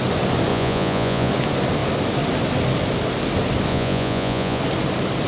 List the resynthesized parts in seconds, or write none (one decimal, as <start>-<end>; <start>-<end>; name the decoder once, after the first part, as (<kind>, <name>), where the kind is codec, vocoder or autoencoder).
0.5-1.3 (vocoder, Vocos); 3.7-4.6